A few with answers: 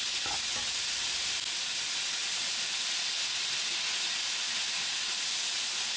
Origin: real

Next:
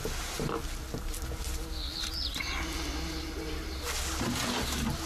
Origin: real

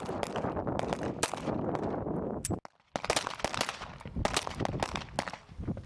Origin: real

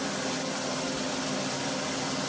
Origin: real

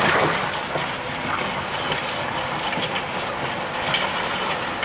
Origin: real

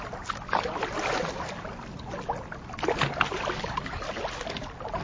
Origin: real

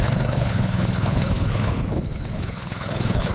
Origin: fake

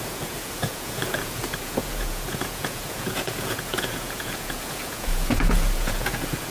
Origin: fake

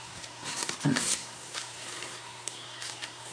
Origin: fake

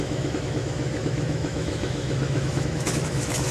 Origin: fake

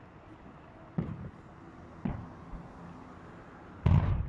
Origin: real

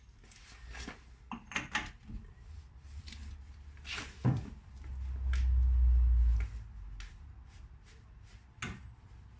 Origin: real